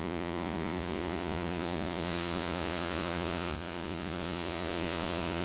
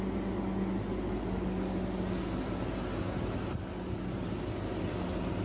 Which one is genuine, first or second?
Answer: second